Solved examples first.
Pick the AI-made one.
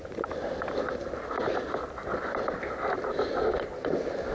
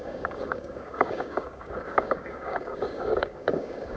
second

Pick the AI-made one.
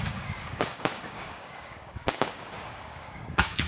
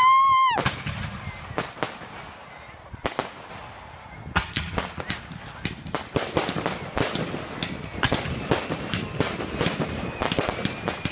first